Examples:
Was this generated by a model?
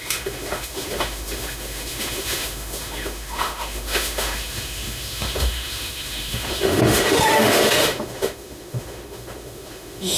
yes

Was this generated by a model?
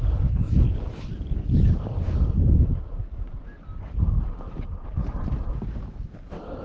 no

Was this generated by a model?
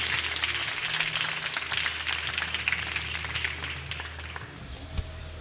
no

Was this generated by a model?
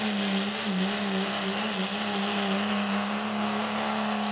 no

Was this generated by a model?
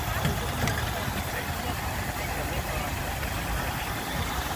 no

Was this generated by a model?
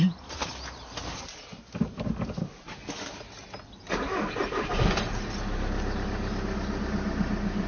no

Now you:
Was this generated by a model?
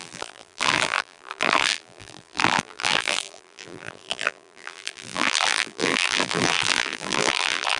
yes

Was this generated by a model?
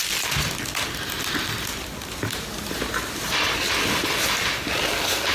no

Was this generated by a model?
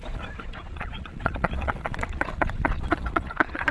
yes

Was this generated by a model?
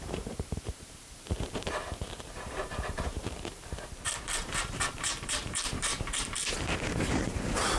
yes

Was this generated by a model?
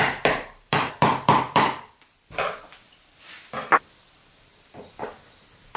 yes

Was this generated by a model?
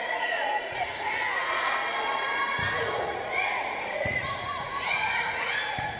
yes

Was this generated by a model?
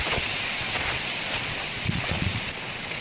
yes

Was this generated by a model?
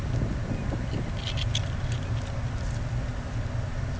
no